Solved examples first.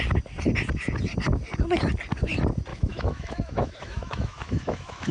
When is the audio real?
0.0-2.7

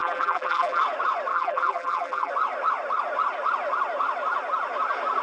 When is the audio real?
0.8-1.3; 2.3-5.2

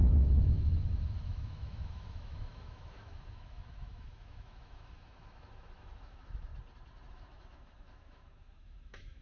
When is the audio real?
6.5-7.1

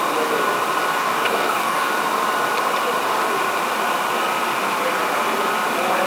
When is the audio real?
0.0-1.0; 1.9-6.1